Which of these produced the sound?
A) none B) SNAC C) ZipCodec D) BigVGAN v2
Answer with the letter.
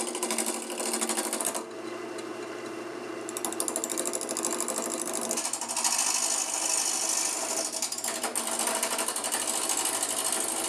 A